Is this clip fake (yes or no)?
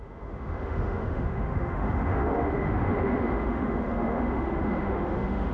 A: yes